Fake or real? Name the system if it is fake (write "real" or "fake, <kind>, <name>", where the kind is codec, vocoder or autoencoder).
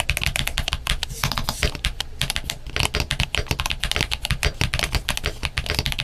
real